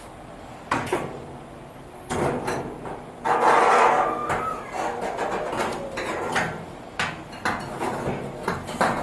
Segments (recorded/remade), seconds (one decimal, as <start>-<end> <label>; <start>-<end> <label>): 0.0-4.2 remade; 4.2-5.5 recorded; 5.5-9.0 remade